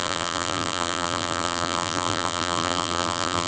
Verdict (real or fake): fake